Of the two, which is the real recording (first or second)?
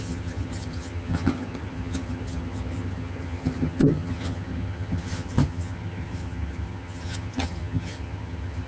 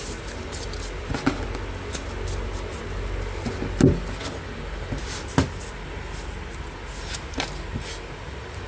second